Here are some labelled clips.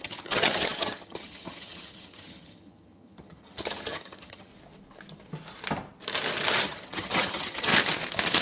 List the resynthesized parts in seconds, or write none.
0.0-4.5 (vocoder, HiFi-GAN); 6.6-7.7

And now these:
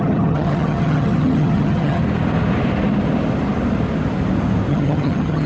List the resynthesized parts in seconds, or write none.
0.0-2.0 (vocoder, HiFi-GAN); 4.7-5.5

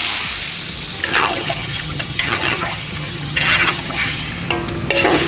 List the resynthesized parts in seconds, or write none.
1.1-4.3 (vocoder, HiFi-GAN)

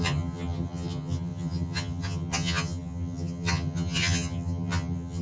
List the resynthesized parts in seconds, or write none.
0.0-5.2 (vocoder, HiFi-GAN)

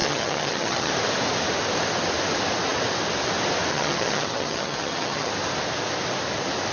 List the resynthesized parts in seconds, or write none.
0.0-0.9 (vocoder, HiFi-GAN); 3.7-5.3

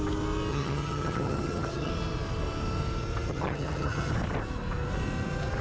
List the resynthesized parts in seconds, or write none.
0.5-1.9 (vocoder, HiFi-GAN); 3.3-4.1